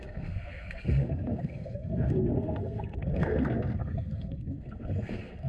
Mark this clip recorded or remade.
remade